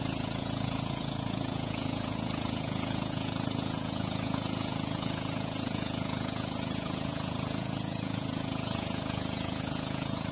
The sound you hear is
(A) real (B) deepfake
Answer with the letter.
B